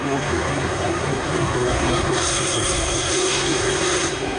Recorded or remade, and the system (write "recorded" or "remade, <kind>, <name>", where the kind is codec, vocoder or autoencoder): remade, codec, SNAC